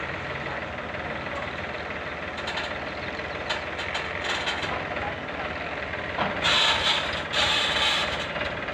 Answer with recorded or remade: recorded